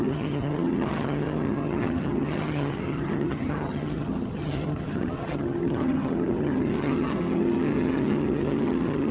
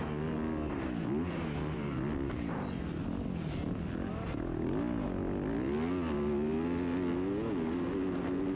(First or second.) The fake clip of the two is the first